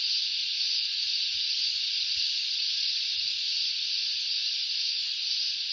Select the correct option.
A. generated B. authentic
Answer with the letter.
A